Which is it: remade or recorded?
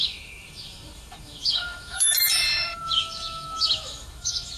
remade